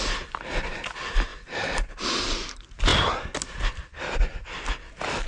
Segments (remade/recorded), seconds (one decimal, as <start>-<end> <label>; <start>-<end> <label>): 0.0-5.3 recorded